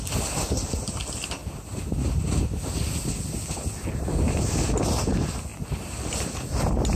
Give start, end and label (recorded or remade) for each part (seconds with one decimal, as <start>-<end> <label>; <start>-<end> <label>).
0.0-6.9 recorded